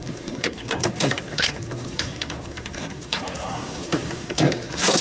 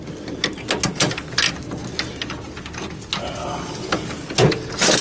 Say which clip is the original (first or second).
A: second